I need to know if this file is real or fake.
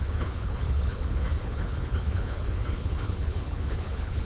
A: fake